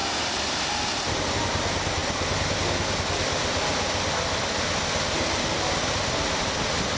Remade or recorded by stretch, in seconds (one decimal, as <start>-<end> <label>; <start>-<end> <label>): 0.0-1.0 remade; 1.0-2.0 recorded; 2.0-4.7 remade; 4.7-7.0 recorded